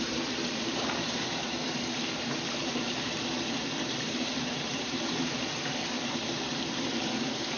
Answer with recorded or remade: remade